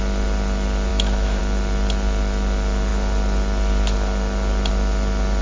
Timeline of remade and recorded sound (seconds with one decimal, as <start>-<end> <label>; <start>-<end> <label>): 0.0-0.9 recorded; 0.9-1.4 remade; 1.4-5.4 recorded